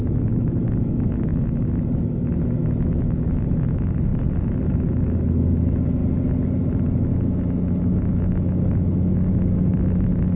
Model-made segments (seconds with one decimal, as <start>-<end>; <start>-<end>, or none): 0.0-4.1; 4.7-6.0; 7.1-10.4